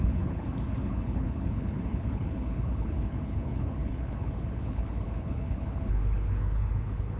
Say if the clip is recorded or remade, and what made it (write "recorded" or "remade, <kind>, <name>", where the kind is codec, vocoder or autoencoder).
remade, codec, HILCodec